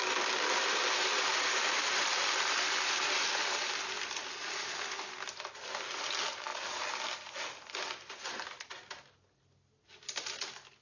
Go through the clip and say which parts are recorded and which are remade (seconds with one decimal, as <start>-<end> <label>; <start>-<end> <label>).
0.0-10.8 recorded